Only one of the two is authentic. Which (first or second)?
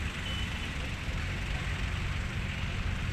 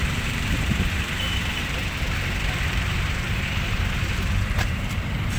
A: first